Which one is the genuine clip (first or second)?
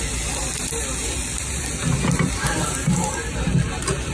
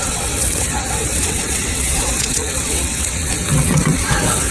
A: first